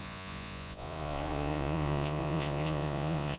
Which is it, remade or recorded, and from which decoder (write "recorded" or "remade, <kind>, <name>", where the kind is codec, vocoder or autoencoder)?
remade, vocoder, Vocos